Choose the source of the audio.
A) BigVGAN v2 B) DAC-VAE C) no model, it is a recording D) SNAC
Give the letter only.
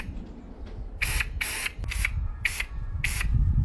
C